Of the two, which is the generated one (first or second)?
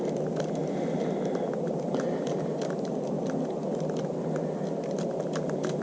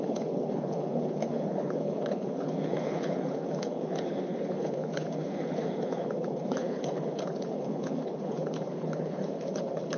second